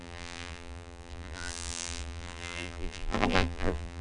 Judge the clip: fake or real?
fake